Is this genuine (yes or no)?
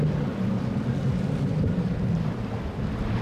yes